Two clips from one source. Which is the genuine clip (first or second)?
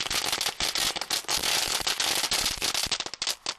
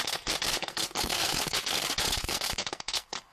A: first